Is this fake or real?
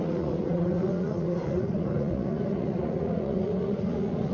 fake